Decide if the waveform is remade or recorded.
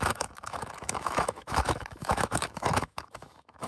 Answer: remade